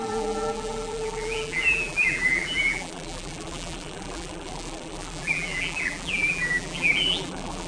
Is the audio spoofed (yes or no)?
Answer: yes